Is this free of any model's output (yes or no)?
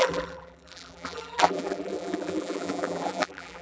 no